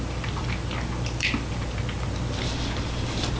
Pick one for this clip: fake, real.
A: real